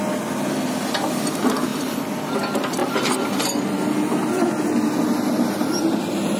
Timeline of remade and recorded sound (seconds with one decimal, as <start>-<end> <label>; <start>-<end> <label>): 0.0-6.4 recorded